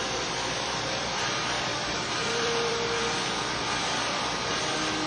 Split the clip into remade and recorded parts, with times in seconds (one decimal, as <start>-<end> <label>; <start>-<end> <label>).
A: 0.0-3.8 remade; 3.8-4.5 recorded; 4.5-5.1 remade